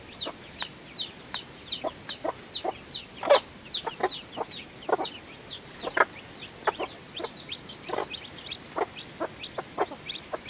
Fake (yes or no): no